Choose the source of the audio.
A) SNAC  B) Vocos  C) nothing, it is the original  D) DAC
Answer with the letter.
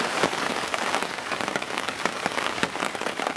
D